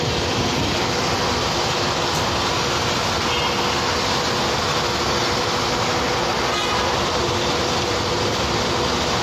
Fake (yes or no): no